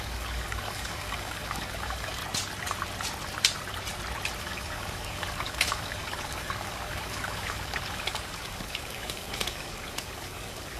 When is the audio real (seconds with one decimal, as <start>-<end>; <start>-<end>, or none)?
2.2-4.4